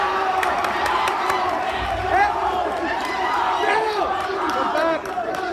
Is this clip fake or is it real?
fake